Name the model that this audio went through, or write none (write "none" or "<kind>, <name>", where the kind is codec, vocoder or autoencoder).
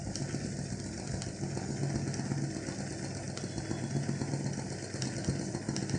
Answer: none